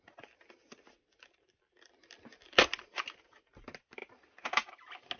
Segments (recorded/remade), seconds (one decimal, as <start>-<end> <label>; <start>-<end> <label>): 0.0-4.0 recorded; 4.0-4.7 remade; 4.7-5.2 recorded